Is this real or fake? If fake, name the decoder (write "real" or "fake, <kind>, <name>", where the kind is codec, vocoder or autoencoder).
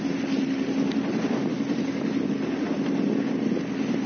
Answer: real